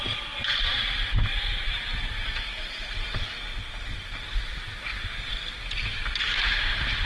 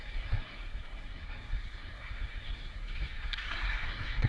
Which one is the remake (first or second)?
second